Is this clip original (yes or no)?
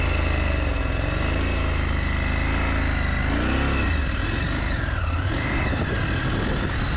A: yes